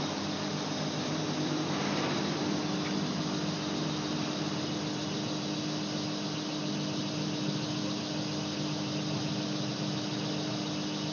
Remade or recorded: recorded